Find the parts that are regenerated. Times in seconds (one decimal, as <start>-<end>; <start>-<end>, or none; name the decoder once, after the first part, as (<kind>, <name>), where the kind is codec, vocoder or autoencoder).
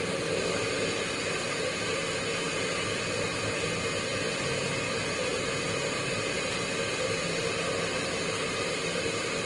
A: none